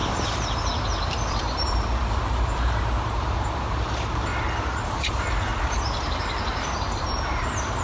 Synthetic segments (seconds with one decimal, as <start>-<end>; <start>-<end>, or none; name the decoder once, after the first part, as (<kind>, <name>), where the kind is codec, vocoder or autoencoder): 0.0-4.3 (vocoder, BigVGAN v2); 5.0-5.5; 6.1-7.8

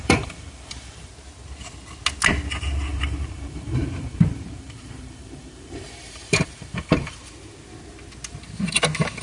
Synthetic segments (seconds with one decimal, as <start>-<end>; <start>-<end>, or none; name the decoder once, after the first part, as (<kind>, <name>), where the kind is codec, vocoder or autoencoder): 0.0-1.1 (vocoder, BigVGAN v2); 2.9-7.1

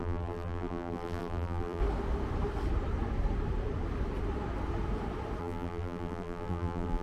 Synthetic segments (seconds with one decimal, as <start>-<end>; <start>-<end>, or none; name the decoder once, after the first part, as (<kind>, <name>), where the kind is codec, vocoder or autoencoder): 0.0-1.8 (vocoder, BigVGAN v2); 5.4-7.0

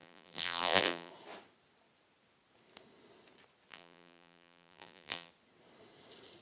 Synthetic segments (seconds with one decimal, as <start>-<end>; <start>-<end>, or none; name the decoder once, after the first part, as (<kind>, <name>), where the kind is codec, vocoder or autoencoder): 0.0-1.1 (vocoder, BigVGAN v2); 3.7-5.3

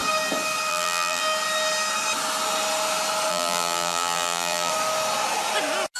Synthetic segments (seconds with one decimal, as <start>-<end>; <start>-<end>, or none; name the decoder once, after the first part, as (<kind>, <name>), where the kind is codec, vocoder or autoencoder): 0.7-1.2 (vocoder, BigVGAN v2); 3.3-4.7

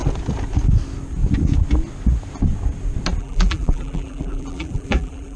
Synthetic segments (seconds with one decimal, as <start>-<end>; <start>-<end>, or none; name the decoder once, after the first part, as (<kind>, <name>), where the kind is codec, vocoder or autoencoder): 3.2-5.4 (vocoder, BigVGAN v2)